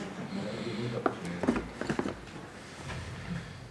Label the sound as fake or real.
real